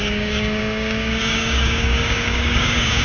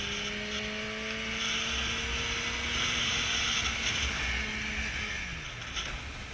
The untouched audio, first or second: second